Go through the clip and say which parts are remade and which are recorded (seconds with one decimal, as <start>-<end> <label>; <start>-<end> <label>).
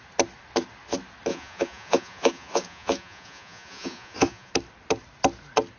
0.0-1.3 recorded; 1.3-4.5 remade; 4.5-5.8 recorded